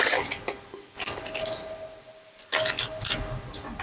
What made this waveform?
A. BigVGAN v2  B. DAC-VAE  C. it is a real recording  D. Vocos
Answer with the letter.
C